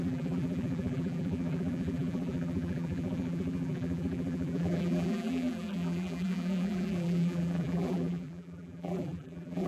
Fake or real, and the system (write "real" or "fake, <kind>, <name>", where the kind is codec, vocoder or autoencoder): fake, vocoder, BigVGAN v2